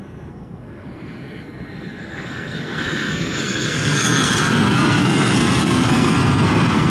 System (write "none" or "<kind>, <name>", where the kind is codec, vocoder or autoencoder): codec, SNAC